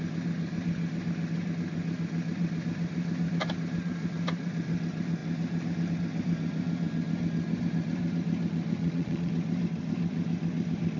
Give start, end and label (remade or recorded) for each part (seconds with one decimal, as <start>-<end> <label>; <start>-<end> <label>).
0.0-8.8 recorded; 8.8-9.3 remade; 9.3-11.0 recorded